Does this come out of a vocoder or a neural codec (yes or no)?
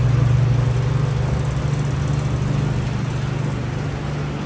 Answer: no